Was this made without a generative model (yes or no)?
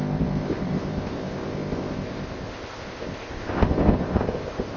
no